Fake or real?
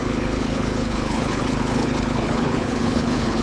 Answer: fake